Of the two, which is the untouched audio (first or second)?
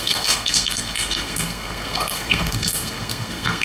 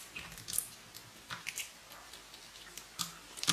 second